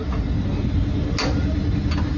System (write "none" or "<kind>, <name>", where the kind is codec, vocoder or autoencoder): none